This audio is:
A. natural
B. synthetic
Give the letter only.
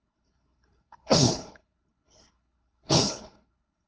B